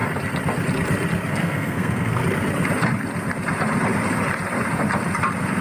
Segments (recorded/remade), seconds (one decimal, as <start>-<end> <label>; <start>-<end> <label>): 0.0-1.3 recorded; 1.3-2.2 remade; 2.2-5.6 recorded